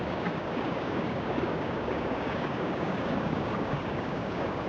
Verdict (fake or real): fake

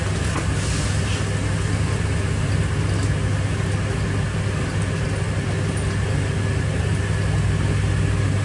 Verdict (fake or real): real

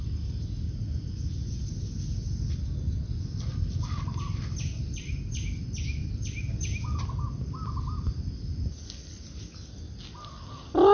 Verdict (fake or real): real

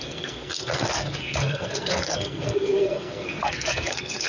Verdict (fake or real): fake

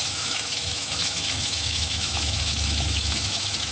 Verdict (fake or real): fake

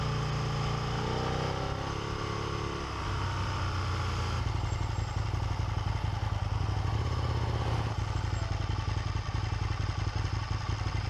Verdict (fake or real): real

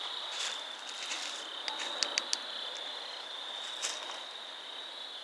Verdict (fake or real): real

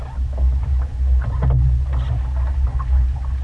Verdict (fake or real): real